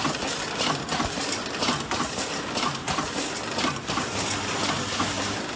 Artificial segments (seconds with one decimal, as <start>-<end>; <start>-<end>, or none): none